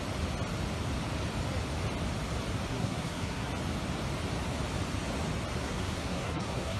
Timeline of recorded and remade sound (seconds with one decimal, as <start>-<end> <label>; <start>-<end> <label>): 0.0-2.7 recorded; 2.7-3.5 remade; 3.5-5.6 recorded; 5.6-6.8 remade